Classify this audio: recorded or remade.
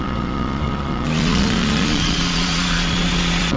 remade